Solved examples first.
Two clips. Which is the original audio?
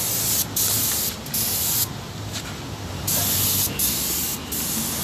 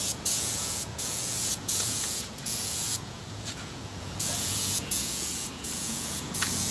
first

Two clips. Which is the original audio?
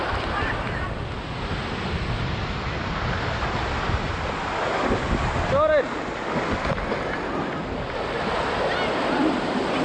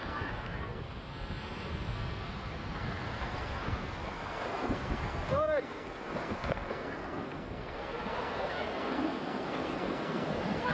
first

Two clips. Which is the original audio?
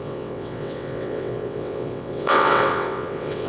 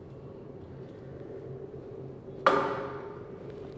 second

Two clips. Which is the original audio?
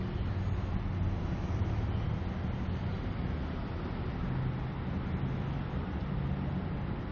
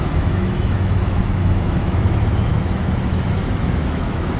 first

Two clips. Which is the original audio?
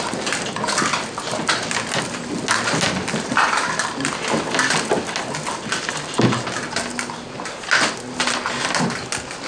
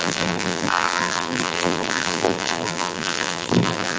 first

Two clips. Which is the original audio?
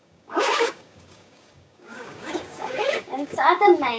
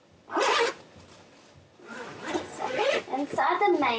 second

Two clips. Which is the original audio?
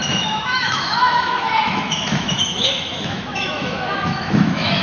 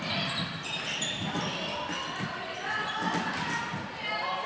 second